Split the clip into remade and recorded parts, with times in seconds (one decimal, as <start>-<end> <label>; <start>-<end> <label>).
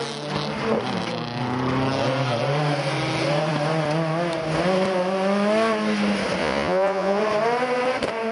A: 0.0-6.4 recorded; 6.4-7.2 remade; 7.2-8.3 recorded